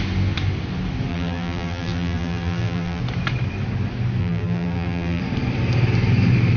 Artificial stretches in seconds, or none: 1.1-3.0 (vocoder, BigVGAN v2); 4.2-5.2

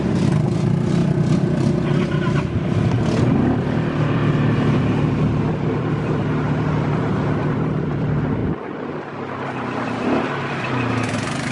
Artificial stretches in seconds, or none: 0.0-1.0 (vocoder, BigVGAN v2); 3.2-8.4; 8.9-11.5

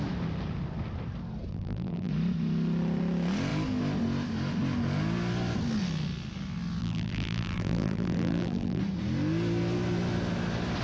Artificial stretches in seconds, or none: 1.5-2.1 (vocoder, BigVGAN v2); 6.8-8.8